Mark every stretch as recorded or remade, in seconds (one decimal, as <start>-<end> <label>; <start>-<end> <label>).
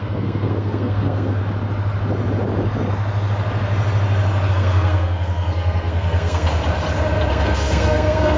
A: 0.0-1.4 remade; 1.4-4.5 recorded; 4.5-6.6 remade; 6.6-7.3 recorded; 7.3-8.4 remade